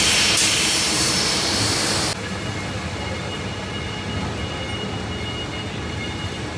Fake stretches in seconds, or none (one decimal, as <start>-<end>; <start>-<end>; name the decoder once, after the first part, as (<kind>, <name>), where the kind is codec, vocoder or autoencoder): 0.0-2.1 (vocoder, BigVGAN v2); 5.9-6.6